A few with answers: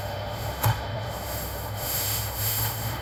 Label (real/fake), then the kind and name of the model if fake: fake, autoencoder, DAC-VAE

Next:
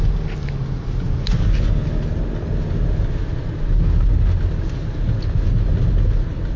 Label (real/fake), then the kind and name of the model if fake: real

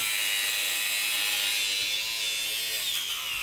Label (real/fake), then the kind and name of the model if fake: real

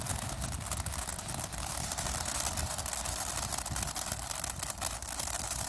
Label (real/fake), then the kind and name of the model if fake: real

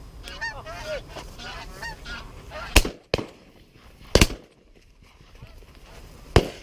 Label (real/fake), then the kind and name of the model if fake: real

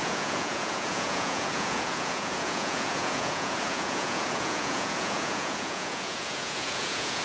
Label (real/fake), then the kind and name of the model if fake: fake, vocoder, Vocos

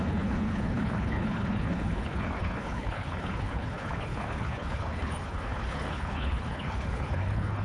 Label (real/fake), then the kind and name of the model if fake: fake, codec, HILCodec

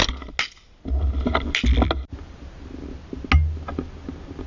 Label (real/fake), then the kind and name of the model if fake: real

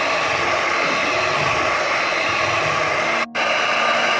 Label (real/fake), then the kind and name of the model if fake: real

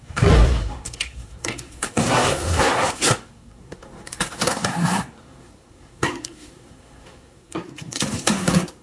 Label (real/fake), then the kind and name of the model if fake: fake, codec, SNAC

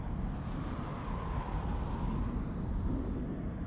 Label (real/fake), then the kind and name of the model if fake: real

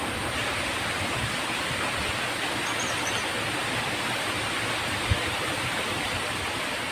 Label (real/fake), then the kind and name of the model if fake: real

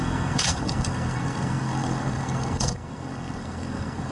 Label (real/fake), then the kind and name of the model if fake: fake, codec, SNAC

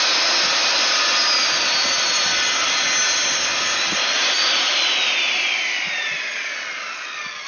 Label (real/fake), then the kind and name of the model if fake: real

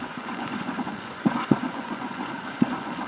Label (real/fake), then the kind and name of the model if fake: fake, vocoder, Vocos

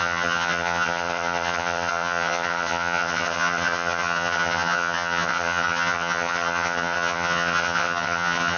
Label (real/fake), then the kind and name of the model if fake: fake, vocoder, HiFi-GAN